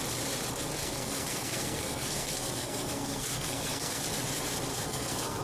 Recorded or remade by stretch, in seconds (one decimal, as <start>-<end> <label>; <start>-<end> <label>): 0.0-0.8 recorded; 0.8-4.0 remade; 4.0-4.7 recorded; 4.7-5.4 remade